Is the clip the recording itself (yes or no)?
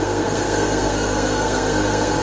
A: no